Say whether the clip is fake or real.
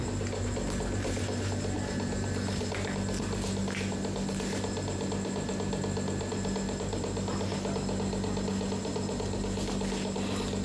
real